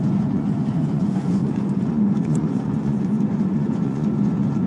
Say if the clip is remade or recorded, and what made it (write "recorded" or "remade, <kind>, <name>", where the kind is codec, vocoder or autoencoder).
remade, vocoder, Vocos